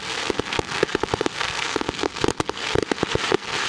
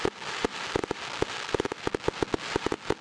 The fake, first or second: first